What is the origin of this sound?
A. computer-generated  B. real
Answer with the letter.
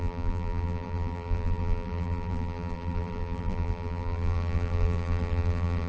A